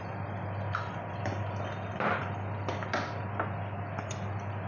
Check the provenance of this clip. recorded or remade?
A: recorded